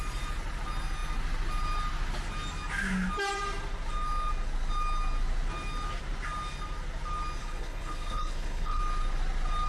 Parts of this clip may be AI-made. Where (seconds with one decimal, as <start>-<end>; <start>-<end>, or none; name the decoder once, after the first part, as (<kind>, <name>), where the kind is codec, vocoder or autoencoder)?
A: 7.4-8.8 (codec, HILCodec)